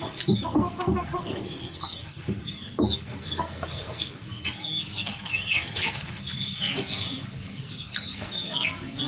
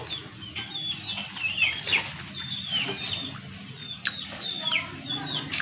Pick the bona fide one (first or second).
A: second